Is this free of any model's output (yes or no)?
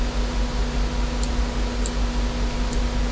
yes